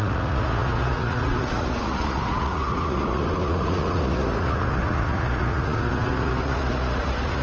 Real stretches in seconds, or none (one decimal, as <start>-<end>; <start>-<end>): none